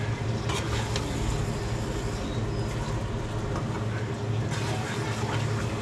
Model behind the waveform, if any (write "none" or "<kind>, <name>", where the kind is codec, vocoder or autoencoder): none